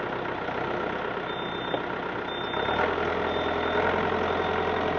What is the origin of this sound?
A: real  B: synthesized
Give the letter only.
A